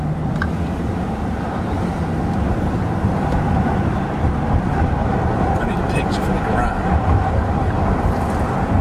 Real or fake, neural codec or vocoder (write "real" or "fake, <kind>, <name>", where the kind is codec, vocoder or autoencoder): real